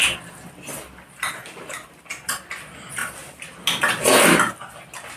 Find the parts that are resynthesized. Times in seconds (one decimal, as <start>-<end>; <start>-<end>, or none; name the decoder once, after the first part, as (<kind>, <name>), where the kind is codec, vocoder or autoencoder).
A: none